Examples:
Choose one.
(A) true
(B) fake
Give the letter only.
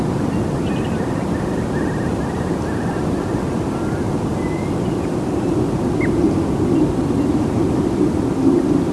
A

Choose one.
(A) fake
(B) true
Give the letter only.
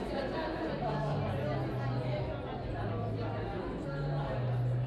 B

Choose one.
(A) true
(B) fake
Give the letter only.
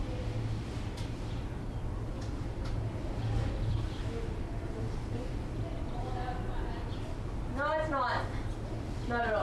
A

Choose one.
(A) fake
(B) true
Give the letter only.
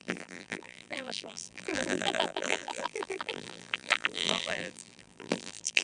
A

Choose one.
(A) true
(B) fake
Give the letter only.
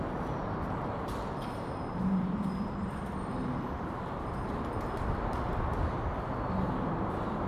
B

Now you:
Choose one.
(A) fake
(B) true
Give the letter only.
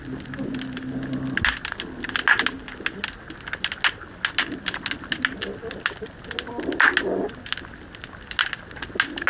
B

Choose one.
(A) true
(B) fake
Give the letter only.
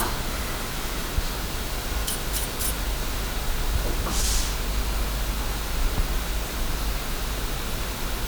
A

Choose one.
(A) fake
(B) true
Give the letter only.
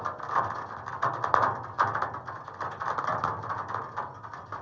B